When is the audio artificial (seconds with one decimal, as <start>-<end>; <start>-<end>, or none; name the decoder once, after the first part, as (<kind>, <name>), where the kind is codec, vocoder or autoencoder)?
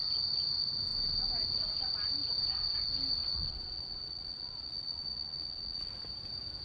3.2-5.9 (vocoder, Vocos)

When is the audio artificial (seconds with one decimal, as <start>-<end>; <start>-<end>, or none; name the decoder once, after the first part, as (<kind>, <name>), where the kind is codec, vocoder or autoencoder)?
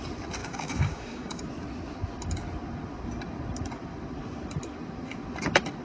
0.4-1.4 (codec, DAC)